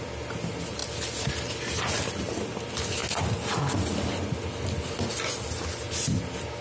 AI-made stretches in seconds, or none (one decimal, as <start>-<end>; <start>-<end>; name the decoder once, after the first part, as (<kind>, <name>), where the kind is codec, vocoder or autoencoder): none